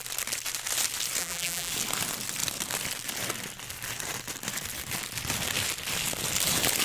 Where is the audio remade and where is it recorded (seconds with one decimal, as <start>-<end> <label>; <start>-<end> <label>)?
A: 0.0-1.2 recorded; 1.2-1.7 remade; 1.7-6.8 recorded